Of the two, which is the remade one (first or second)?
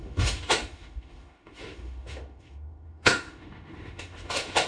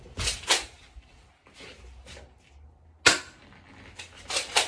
first